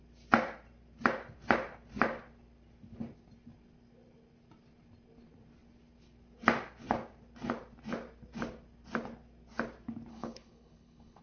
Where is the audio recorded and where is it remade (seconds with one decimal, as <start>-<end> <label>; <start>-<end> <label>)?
0.0-10.1 recorded; 10.1-11.2 remade